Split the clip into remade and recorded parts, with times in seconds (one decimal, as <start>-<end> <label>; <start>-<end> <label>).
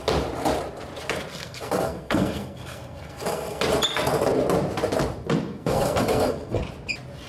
0.0-1.3 recorded; 1.3-3.6 remade; 3.6-5.5 recorded; 5.5-6.6 remade; 6.6-7.3 recorded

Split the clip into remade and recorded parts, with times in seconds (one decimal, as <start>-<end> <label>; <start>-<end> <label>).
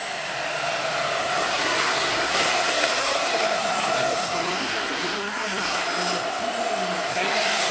0.0-1.2 recorded; 1.2-5.8 remade; 5.8-7.1 recorded; 7.1-7.7 remade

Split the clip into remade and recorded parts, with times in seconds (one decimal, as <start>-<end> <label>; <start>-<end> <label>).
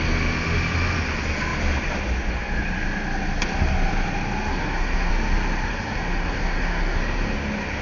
0.0-4.5 recorded; 4.5-5.1 remade; 5.1-5.7 recorded; 5.7-7.0 remade; 7.0-7.8 recorded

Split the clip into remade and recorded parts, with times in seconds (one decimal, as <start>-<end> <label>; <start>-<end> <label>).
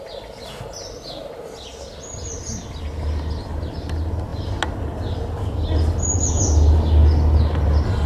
0.0-8.1 recorded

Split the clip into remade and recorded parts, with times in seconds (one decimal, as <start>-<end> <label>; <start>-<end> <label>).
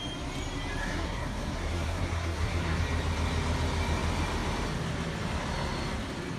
0.0-0.8 recorded; 0.8-2.8 remade; 2.8-6.4 recorded